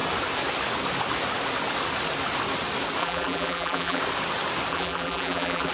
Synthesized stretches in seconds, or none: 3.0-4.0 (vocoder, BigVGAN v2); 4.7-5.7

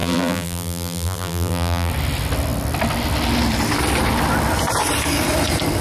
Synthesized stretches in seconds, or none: 0.0-1.9 (vocoder, BigVGAN v2)

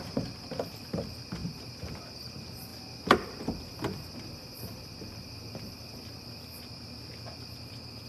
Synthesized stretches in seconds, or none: none

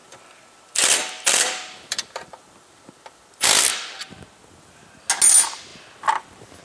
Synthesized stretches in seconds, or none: 0.0-4.0 (vocoder, BigVGAN v2)

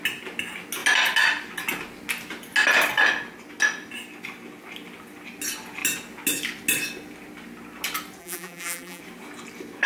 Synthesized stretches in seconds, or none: 8.2-9.0 (vocoder, BigVGAN v2)

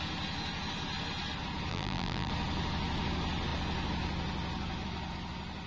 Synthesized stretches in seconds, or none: 1.7-2.3 (vocoder, BigVGAN v2)

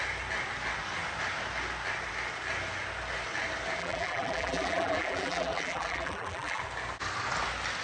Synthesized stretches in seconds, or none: 3.8-6.6 (vocoder, BigVGAN v2)